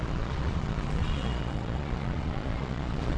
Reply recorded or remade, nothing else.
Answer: remade